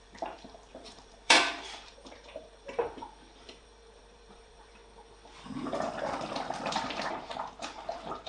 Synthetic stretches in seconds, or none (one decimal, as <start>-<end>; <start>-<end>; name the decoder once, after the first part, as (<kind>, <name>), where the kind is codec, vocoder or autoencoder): 0.0-4.8 (vocoder, BigVGAN v2); 6.7-8.3

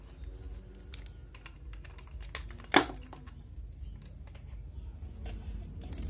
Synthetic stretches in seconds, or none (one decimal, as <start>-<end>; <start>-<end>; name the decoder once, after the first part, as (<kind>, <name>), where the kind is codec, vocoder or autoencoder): none

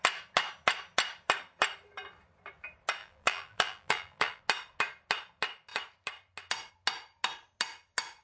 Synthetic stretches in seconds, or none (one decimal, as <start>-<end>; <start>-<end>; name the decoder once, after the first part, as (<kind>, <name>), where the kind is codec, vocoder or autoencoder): 3.0-4.4 (vocoder, BigVGAN v2)

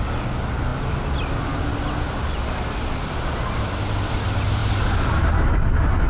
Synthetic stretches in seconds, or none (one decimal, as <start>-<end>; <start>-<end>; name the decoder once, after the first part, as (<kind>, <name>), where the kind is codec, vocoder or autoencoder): none

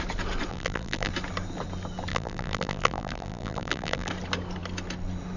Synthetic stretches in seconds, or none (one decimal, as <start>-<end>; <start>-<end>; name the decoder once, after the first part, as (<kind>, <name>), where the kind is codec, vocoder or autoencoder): 0.5-1.1 (vocoder, BigVGAN v2); 2.1-4.1

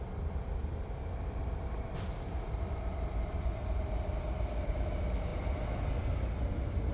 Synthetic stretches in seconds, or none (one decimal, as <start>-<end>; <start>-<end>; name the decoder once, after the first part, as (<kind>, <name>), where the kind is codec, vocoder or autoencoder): 0.6-4.7 (vocoder, BigVGAN v2)

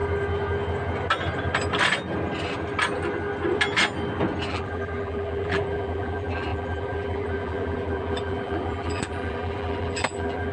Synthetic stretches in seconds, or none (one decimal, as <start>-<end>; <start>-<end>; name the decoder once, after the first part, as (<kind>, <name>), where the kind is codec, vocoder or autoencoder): 4.5-10.5 (vocoder, BigVGAN v2)